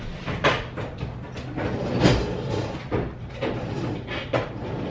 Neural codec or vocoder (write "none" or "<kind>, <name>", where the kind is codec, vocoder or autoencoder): none